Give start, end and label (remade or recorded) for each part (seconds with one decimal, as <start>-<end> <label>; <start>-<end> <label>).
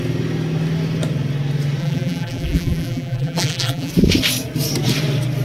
0.0-1.8 recorded; 1.8-3.9 remade; 3.9-5.4 recorded